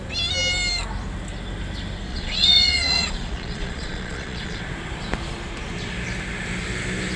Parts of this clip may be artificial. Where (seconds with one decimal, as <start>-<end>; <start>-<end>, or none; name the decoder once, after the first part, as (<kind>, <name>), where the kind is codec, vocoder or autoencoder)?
2.1-4.6 (vocoder, Vocos)